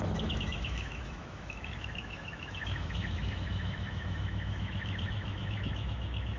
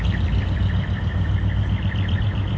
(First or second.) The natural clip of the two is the second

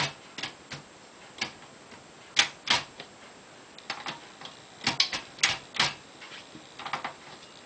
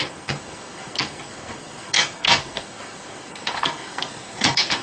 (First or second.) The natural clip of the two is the first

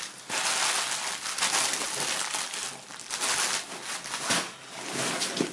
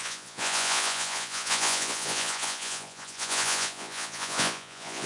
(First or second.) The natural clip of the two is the first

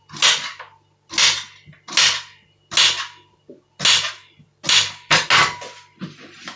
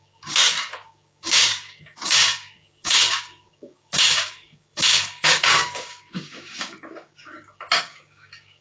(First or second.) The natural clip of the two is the first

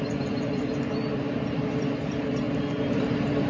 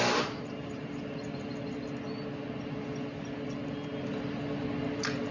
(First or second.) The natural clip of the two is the second